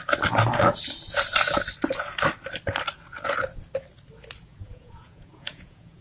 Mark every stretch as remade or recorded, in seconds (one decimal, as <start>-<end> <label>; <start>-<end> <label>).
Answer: 0.0-4.5 recorded; 4.5-6.0 remade